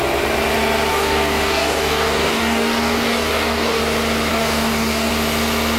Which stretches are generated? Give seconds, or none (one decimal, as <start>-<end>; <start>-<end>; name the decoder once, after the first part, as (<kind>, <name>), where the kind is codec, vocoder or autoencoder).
0.9-3.8 (codec, DAC); 4.3-5.1